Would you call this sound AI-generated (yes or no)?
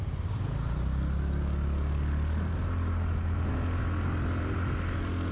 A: no